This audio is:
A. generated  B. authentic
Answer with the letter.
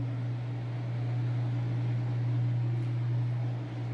B